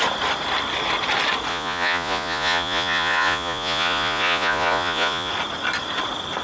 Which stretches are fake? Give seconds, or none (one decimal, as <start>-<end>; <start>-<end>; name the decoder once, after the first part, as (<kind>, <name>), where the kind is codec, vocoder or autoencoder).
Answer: 1.5-5.3 (vocoder, Vocos)